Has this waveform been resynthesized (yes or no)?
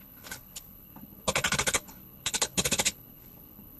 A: yes